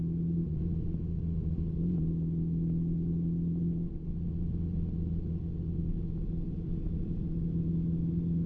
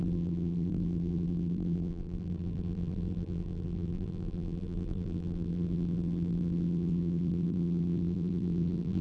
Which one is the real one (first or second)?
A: first